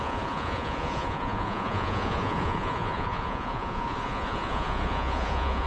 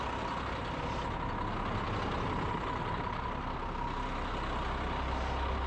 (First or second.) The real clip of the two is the second